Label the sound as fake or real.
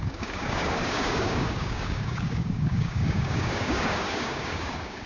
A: fake